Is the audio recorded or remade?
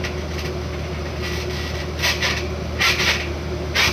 recorded